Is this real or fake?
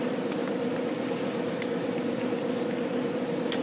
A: real